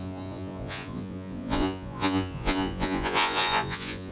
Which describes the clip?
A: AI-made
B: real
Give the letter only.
A